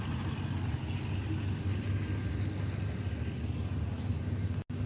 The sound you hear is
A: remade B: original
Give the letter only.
B